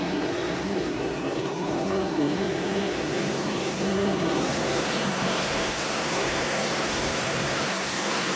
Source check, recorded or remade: remade